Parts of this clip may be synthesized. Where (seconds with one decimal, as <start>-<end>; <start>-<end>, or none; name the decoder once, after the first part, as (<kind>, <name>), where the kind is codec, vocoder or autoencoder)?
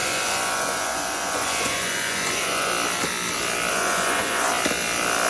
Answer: 0.0-2.7 (vocoder, Vocos); 3.7-4.5